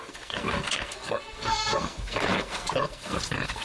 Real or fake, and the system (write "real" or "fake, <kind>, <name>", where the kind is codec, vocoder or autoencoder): fake, codec, SNAC